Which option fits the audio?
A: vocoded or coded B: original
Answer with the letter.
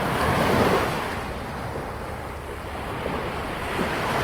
B